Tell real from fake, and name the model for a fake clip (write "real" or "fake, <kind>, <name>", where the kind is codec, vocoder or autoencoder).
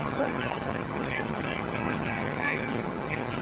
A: fake, vocoder, HiFi-GAN